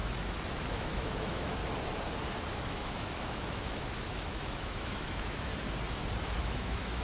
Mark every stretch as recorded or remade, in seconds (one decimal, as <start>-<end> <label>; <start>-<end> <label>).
0.0-0.5 recorded; 0.5-1.6 remade; 1.6-2.5 recorded; 2.5-5.5 remade; 5.5-6.4 recorded; 6.4-7.0 remade